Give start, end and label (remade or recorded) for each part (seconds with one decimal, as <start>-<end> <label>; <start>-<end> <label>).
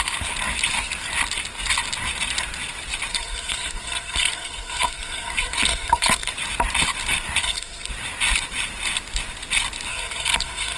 0.0-3.1 recorded; 3.1-6.3 remade; 6.3-7.4 recorded; 7.4-7.9 remade; 7.9-9.9 recorded; 9.9-10.8 remade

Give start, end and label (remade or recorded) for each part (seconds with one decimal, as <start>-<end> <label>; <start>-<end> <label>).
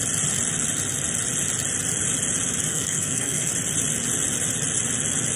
0.0-2.7 recorded; 2.7-3.5 remade; 3.5-5.4 recorded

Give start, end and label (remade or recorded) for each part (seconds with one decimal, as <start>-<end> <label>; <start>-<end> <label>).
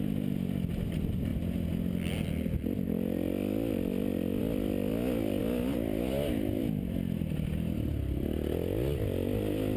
0.0-9.8 recorded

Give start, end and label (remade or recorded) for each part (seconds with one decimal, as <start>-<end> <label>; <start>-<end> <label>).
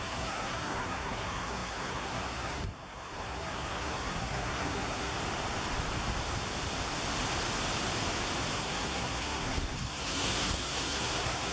0.0-5.2 remade; 5.2-8.5 recorded; 8.5-11.5 remade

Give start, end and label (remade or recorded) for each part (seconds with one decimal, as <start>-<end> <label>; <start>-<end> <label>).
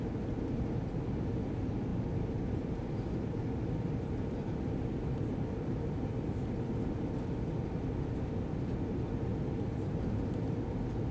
0.0-11.1 recorded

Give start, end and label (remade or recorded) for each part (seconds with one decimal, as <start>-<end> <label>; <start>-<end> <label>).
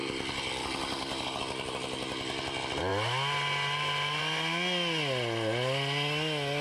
0.0-6.6 recorded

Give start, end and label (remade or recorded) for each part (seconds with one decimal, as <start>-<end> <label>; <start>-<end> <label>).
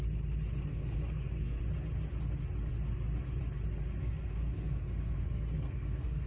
0.0-0.7 recorded; 0.7-1.6 remade; 1.6-4.0 recorded; 4.0-6.3 remade